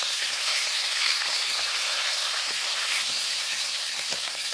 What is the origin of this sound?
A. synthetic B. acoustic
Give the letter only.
A